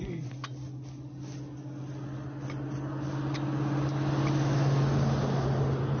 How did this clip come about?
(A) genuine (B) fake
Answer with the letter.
A